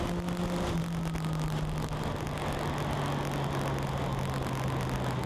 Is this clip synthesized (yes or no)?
no